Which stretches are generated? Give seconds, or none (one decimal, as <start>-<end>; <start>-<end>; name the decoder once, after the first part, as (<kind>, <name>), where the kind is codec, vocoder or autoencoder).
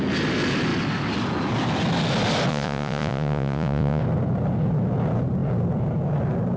2.5-4.0 (vocoder, Vocos)